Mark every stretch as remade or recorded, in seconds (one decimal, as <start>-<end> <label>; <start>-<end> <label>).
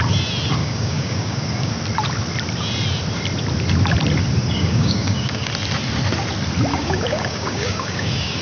0.0-0.6 recorded; 0.6-1.7 remade; 1.7-4.4 recorded; 4.4-5.5 remade; 5.5-6.7 recorded; 6.7-8.4 remade